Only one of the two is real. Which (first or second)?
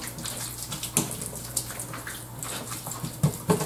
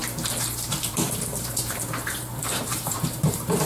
first